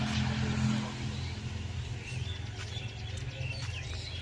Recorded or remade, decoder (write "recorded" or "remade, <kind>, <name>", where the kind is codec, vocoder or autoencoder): recorded